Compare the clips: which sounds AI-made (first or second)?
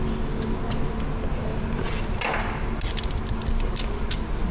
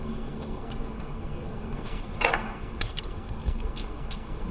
second